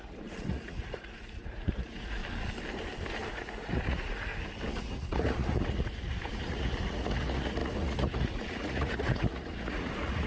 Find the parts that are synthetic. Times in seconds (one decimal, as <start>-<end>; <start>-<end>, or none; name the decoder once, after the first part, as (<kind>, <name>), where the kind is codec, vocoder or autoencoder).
0.0-2.2 (vocoder, Vocos); 3.3-4.3; 4.8-10.3